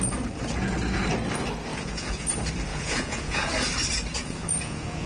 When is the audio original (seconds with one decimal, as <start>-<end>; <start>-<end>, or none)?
0.0-1.7; 2.3-2.7; 3.5-4.2

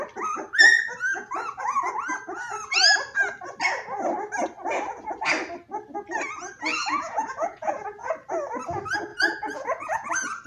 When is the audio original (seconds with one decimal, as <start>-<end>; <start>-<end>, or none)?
0.0-1.1; 1.6-6.7; 8.1-9.1; 10.1-10.5

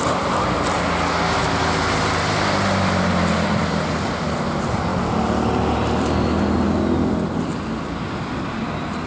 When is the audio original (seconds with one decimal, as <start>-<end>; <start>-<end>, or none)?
0.0-9.1

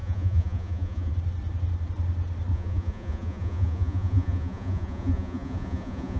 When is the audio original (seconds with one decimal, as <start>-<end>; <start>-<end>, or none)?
1.1-2.5

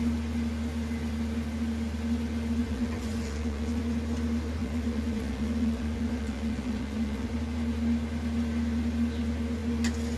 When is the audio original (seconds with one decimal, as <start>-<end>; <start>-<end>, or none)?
0.0-2.6; 3.8-4.6; 7.3-10.2